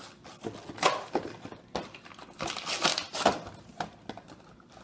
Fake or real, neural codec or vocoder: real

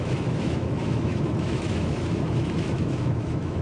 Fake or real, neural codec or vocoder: fake, autoencoder, DAC-VAE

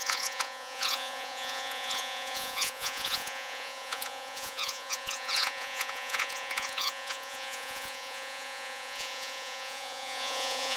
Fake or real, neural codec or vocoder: fake, vocoder, Vocos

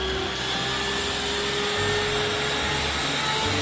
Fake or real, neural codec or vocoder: real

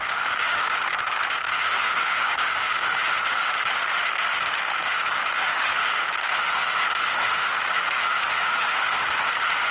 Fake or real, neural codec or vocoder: fake, autoencoder, DAC-VAE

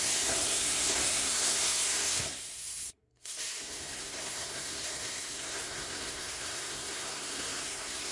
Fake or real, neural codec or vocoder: fake, codec, SNAC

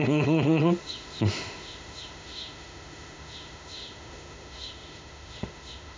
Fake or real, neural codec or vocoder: fake, autoencoder, DAC-VAE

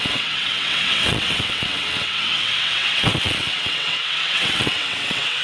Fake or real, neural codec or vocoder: fake, vocoder, WaveNeXt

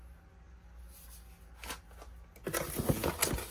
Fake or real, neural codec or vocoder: real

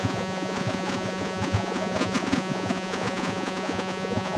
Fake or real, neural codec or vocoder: fake, vocoder, Vocos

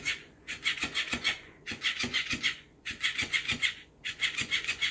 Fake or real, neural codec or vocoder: fake, vocoder, Vocos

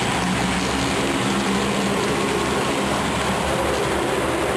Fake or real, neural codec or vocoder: real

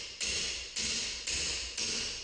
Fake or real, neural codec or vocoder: real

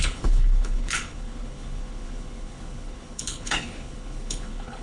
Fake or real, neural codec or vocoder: fake, codec, HILCodec